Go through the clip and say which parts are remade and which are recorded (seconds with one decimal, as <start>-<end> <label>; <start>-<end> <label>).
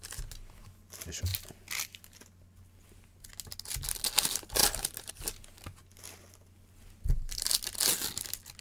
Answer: 0.0-4.6 recorded; 4.6-5.1 remade; 5.1-8.6 recorded